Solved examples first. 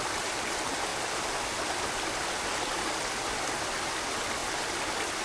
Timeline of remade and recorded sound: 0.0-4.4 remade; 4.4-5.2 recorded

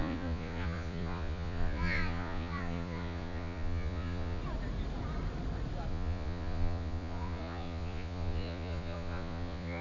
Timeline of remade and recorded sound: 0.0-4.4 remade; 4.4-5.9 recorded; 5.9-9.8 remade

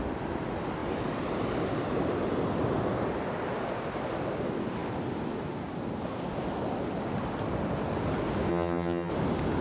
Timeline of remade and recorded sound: 0.0-8.5 recorded; 8.5-9.1 remade; 9.1-9.6 recorded

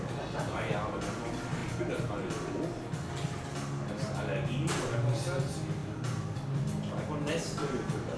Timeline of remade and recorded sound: 0.0-8.2 recorded

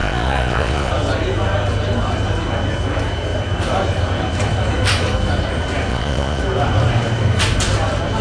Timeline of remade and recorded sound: 0.0-0.9 remade; 0.9-5.9 recorded; 5.9-6.4 remade; 6.4-8.2 recorded

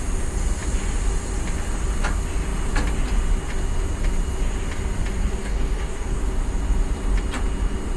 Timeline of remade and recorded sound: 0.0-5.4 recorded; 5.4-6.2 remade; 6.2-8.0 recorded

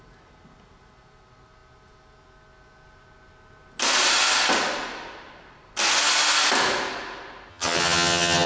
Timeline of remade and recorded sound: 0.0-7.5 recorded; 7.5-8.5 remade